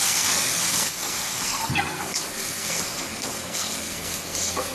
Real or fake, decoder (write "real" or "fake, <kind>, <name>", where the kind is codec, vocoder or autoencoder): fake, codec, SNAC